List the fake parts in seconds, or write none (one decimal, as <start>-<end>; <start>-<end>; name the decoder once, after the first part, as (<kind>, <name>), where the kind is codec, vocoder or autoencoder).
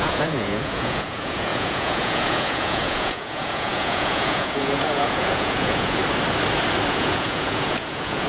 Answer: 0.0-6.0 (vocoder, Vocos); 6.9-8.3